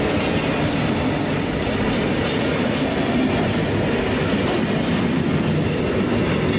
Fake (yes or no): no